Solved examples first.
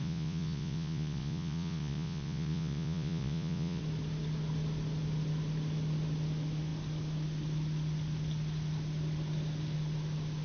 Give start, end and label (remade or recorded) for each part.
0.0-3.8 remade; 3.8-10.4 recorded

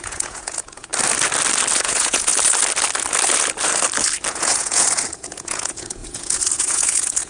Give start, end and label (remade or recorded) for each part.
0.0-0.9 remade; 0.9-1.8 recorded; 1.8-2.3 remade; 2.3-4.3 recorded; 4.3-7.3 remade

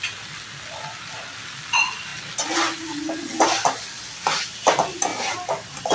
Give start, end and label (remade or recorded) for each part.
0.0-5.9 recorded

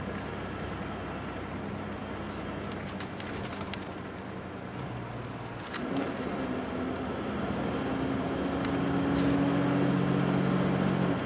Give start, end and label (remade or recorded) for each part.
0.0-11.3 recorded

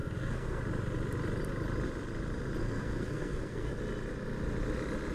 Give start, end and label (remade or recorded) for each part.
0.0-0.6 remade; 0.6-2.6 recorded; 2.6-3.7 remade; 3.7-5.1 recorded

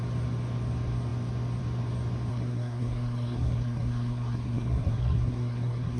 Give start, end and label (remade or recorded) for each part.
0.0-2.3 recorded; 2.3-6.0 remade